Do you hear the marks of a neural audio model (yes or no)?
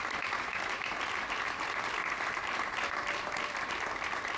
no